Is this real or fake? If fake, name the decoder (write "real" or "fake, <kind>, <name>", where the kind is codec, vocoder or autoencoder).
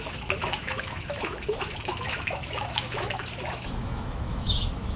fake, autoencoder, DAC-VAE